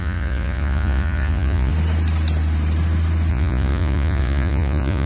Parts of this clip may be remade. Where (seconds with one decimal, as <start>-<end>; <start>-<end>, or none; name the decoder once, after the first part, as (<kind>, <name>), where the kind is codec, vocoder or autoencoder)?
0.0-1.7 (vocoder, Vocos); 3.3-5.1